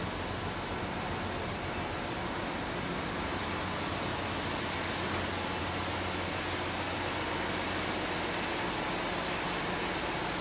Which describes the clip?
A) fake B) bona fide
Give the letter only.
B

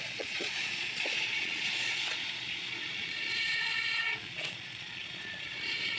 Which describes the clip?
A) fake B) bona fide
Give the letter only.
A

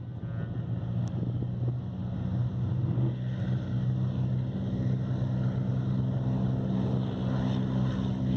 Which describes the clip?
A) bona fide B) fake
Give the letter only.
A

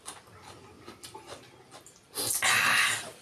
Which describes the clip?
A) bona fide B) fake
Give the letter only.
A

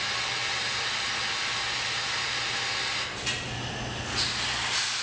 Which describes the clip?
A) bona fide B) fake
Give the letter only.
A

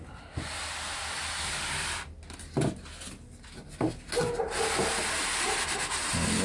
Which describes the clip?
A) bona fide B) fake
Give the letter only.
A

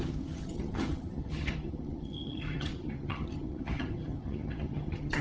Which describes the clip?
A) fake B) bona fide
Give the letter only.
A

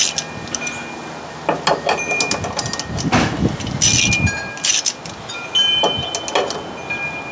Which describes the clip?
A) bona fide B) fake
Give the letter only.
A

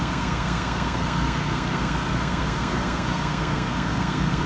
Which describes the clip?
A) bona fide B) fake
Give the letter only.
B